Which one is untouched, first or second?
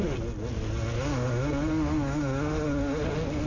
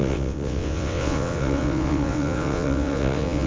first